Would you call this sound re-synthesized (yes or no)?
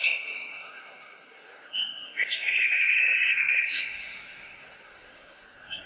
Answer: yes